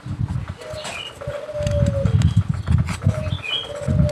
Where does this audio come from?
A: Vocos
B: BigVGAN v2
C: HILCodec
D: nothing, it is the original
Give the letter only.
D